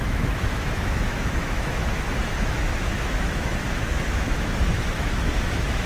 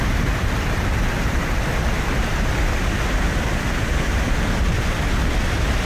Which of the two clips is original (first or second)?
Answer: second